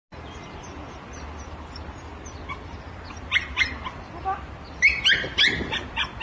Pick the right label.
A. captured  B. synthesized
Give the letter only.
A